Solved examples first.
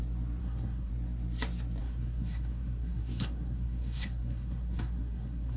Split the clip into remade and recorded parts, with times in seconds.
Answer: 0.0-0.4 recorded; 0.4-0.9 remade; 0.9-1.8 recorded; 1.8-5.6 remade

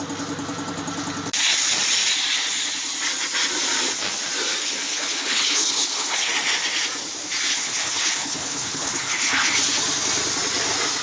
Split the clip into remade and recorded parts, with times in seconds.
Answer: 0.0-4.6 recorded; 4.6-6.3 remade; 6.3-7.5 recorded; 7.5-9.5 remade; 9.5-11.0 recorded

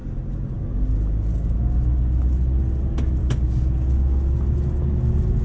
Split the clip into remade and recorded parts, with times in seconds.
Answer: 0.0-5.4 recorded

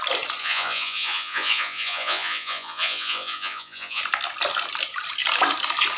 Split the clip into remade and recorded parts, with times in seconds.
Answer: 0.0-0.4 recorded; 0.4-4.0 remade; 4.0-6.0 recorded

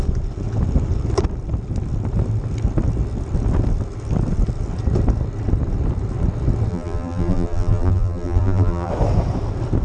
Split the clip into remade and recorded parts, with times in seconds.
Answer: 0.0-6.7 recorded; 6.7-8.9 remade; 8.9-9.8 recorded

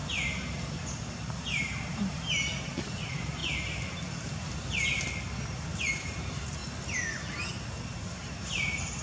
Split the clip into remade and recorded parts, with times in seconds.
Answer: 0.0-1.9 recorded; 1.9-3.4 remade; 3.4-5.9 recorded; 5.9-6.6 remade; 6.6-7.8 recorded; 7.8-9.0 remade

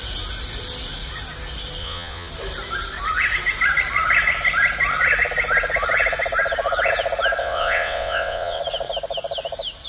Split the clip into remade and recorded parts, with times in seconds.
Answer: 0.0-1.8 recorded; 1.8-2.3 remade; 2.3-7.4 recorded; 7.4-8.6 remade; 8.6-9.9 recorded

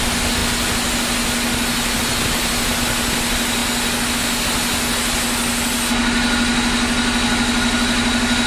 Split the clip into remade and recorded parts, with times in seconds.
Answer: 0.0-8.5 recorded